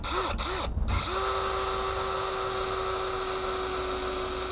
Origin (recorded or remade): recorded